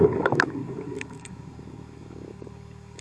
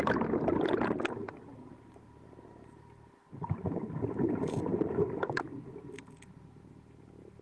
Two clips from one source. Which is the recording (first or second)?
second